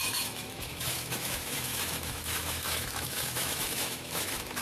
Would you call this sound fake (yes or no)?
yes